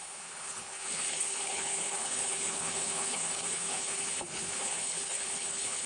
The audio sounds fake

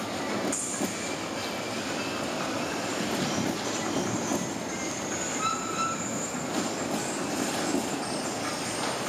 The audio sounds real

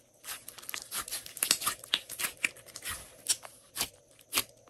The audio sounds real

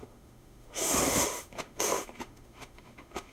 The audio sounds fake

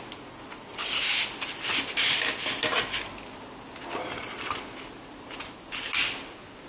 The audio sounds real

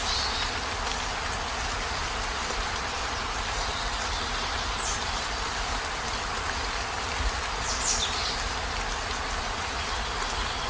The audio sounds fake